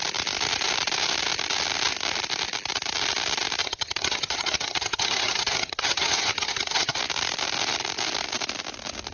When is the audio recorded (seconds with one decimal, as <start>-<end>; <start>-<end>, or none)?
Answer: 0.0-3.6; 7.0-9.1